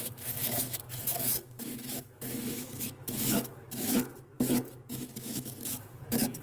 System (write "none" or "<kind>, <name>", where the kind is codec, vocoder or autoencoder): autoencoder, DAC-VAE